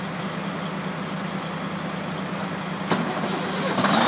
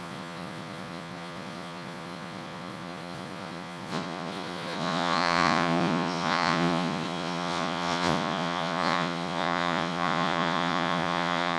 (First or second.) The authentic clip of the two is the first